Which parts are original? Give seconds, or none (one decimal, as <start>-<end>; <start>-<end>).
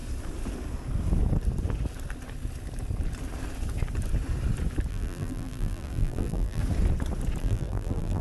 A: 0.0-4.9; 6.6-7.4